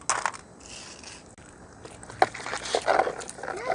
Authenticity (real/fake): real